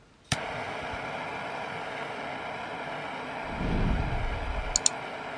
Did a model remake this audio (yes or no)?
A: no